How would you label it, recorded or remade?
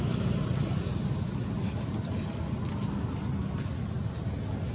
recorded